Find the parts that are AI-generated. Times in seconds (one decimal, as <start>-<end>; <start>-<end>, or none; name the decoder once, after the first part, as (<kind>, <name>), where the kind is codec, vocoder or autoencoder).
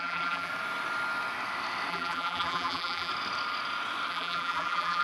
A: 0.0-0.5 (vocoder, BigVGAN v2); 1.9-3.1; 4.1-5.0